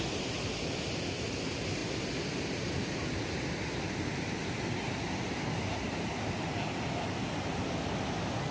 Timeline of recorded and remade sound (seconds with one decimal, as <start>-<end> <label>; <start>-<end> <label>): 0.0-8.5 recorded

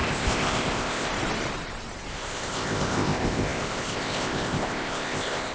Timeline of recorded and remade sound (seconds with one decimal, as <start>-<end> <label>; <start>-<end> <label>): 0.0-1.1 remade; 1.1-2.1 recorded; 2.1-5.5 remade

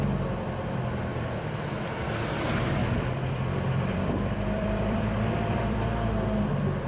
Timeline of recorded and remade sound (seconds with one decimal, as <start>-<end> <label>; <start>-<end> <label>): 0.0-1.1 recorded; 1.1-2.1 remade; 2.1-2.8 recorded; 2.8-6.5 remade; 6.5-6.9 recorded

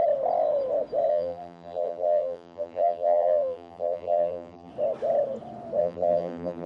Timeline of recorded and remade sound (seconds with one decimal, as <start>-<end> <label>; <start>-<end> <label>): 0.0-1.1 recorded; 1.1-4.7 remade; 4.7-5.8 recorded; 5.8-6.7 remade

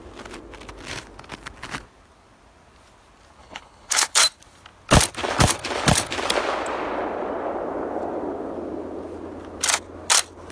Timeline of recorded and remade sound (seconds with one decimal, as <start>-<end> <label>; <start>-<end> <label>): 0.0-3.4 recorded; 3.4-4.2 remade; 4.2-10.5 recorded

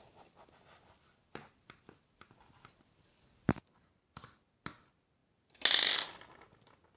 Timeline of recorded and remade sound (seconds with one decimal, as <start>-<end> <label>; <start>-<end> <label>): 0.0-7.0 recorded

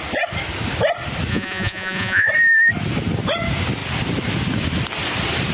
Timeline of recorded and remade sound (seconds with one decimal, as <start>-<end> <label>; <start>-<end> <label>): 0.0-1.3 recorded; 1.3-2.3 remade; 2.3-5.5 recorded